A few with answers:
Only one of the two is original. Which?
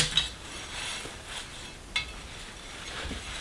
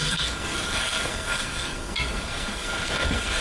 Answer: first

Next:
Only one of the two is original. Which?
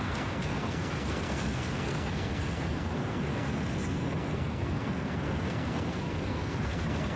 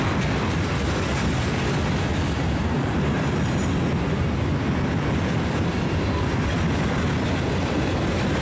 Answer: second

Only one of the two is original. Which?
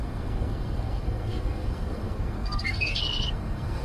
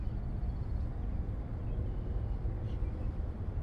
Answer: second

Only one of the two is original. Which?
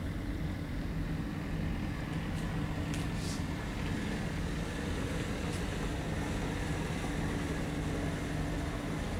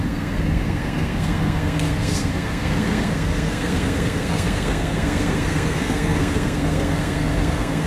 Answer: first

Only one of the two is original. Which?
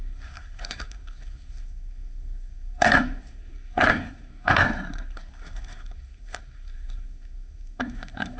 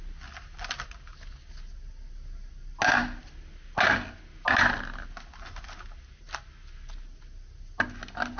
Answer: second